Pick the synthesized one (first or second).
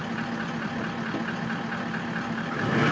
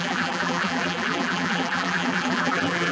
second